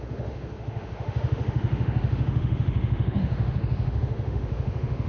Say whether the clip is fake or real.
fake